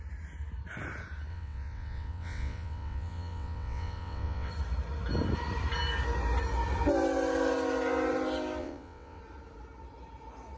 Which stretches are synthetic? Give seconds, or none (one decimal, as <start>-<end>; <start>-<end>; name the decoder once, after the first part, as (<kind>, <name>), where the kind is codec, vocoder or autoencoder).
1.3-4.5 (vocoder, WaveNeXt); 8.6-9.2